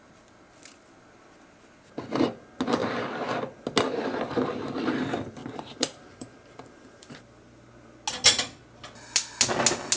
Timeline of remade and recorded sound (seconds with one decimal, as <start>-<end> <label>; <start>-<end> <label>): 0.0-5.4 recorded; 5.4-7.7 remade; 7.7-10.0 recorded

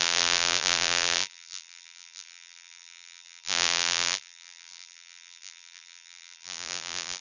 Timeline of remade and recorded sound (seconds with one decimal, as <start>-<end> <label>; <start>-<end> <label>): 0.0-7.2 remade